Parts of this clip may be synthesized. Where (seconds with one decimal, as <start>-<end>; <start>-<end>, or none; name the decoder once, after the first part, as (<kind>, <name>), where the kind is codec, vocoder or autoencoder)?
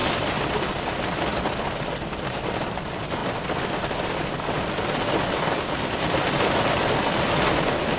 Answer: none